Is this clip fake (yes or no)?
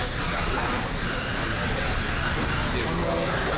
no